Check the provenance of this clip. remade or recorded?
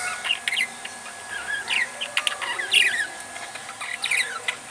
recorded